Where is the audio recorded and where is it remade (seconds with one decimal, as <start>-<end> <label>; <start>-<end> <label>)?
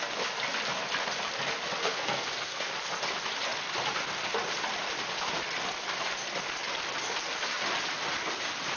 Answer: 0.0-1.8 recorded; 1.8-2.7 remade; 2.7-8.8 recorded